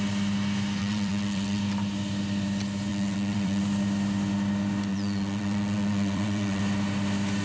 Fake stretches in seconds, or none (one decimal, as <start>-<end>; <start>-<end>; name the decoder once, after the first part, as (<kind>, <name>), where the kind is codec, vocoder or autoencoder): 0.8-1.6 (vocoder, WaveNeXt); 2.9-3.6; 4.9-6.6

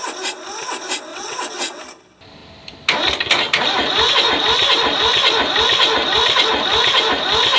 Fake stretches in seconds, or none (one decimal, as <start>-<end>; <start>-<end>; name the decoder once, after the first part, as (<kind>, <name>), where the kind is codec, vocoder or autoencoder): 1.1-1.8 (vocoder, WaveNeXt)

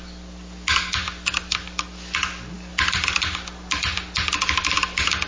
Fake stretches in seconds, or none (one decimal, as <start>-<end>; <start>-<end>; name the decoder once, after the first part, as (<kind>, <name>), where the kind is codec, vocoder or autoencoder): none